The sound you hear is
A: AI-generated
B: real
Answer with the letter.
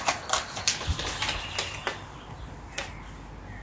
B